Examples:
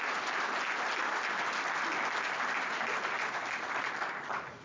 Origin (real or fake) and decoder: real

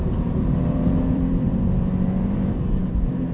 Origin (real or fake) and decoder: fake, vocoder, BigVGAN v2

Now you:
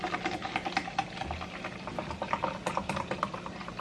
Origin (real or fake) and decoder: real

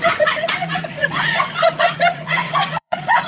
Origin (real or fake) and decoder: fake, vocoder, Vocos